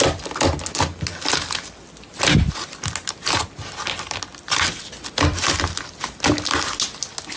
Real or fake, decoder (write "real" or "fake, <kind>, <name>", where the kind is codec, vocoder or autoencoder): real